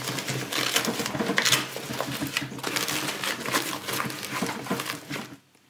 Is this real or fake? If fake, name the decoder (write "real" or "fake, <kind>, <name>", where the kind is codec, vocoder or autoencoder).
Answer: real